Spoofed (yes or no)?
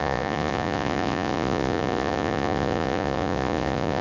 yes